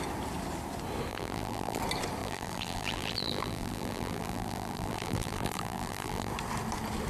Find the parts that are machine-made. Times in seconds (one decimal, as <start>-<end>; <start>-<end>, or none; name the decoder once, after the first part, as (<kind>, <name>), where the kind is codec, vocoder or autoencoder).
1.1-1.8 (vocoder, BigVGAN v2); 2.2-6.3